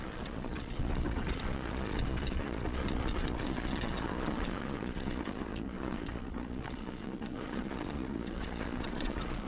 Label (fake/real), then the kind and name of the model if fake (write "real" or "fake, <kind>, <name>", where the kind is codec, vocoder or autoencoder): fake, vocoder, Vocos